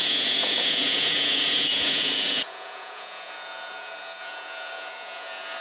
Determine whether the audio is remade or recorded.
remade